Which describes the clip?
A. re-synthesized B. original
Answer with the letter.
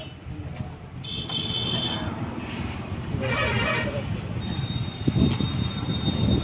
B